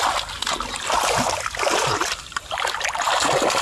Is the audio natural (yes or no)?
yes